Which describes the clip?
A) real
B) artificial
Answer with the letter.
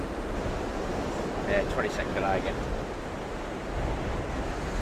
A